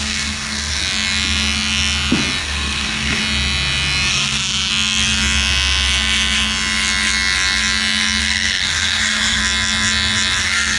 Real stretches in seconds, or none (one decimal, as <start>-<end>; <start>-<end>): 0.8-2.4; 3.2-4.1; 4.7-8.2; 9.4-10.4